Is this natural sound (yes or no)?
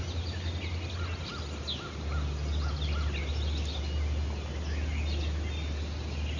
yes